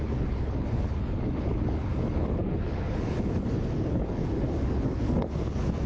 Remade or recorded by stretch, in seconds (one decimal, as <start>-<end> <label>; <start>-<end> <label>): 0.0-5.9 remade